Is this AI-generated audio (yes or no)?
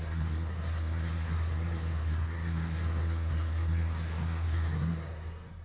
yes